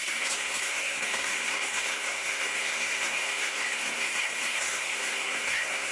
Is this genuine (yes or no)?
no